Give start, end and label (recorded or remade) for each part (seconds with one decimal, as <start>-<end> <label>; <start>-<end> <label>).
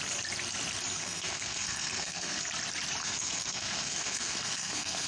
0.0-1.0 recorded; 1.0-2.4 remade; 2.4-3.0 recorded; 3.0-5.1 remade